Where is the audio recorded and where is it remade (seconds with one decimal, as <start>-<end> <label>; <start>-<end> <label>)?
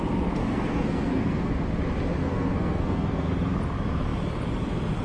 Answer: 0.0-0.4 recorded; 0.4-1.5 remade; 1.5-2.2 recorded; 2.2-3.3 remade; 3.3-5.0 recorded